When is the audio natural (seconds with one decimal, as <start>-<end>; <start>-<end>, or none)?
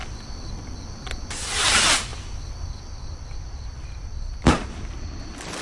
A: 0.0-0.8